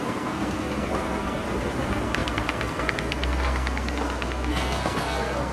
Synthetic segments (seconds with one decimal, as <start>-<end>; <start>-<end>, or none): 0.0-5.5